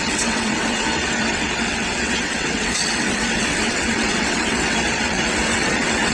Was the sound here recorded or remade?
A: remade